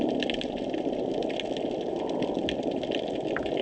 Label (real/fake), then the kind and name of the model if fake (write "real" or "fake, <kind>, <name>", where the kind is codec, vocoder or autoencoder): real